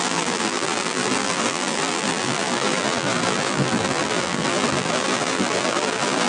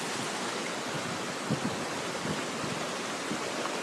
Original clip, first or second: second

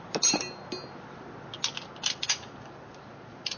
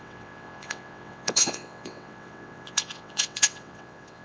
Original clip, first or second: first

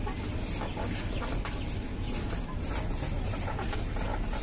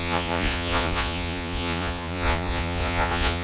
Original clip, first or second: first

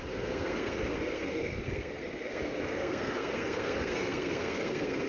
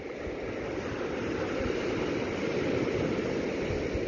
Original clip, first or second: second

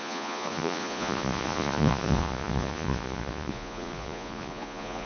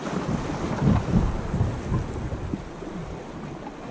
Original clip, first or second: second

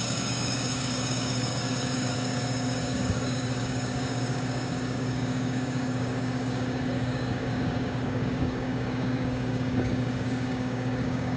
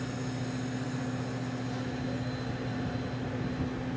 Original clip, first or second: second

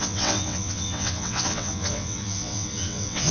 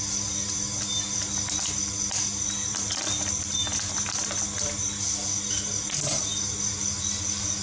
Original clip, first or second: second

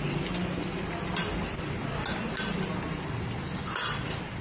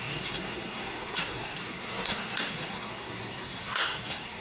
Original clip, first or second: first